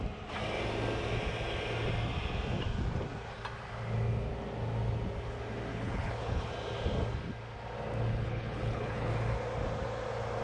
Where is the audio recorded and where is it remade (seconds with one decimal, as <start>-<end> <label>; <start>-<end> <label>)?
0.0-5.7 recorded; 5.7-6.5 remade; 6.5-8.1 recorded; 8.1-9.1 remade; 9.1-10.4 recorded